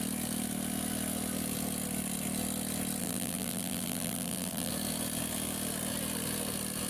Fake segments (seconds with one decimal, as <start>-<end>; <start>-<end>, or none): 3.0-4.7